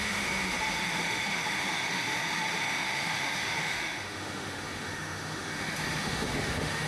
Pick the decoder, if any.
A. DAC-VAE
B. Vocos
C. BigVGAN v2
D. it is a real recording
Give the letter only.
A